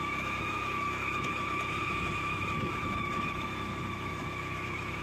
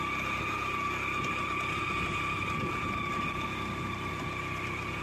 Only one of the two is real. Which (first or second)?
second